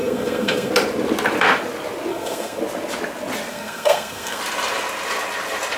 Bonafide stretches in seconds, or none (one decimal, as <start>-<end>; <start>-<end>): 0.7-2.1; 2.6-3.5; 4.4-5.8